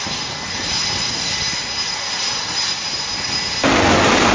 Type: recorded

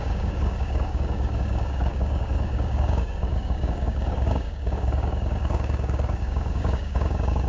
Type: remade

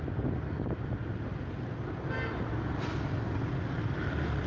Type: recorded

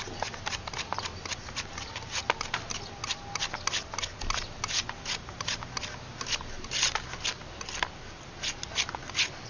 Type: recorded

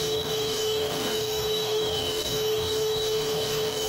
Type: remade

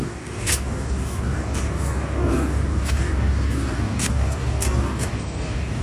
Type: remade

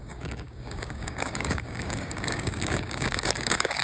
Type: remade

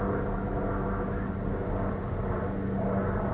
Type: recorded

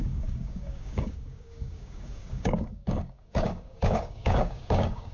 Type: remade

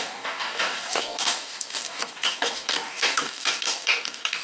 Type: remade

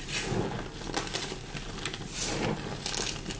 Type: recorded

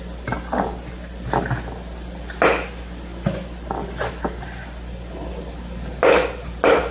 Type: recorded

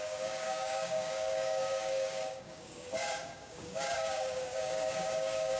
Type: remade